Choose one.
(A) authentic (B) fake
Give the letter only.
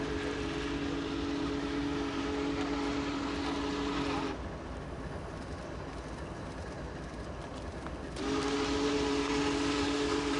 A